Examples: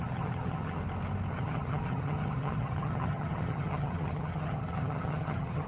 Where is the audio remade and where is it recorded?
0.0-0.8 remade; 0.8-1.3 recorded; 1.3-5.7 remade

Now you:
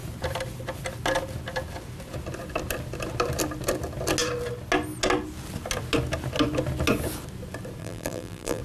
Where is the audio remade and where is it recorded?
0.0-7.8 recorded; 7.8-8.6 remade

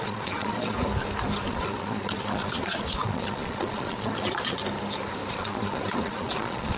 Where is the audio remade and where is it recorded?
0.0-0.8 remade; 0.8-1.5 recorded; 1.5-4.6 remade; 4.6-5.3 recorded; 5.3-6.8 remade